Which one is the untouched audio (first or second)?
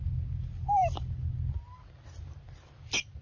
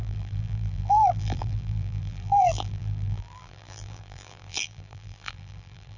first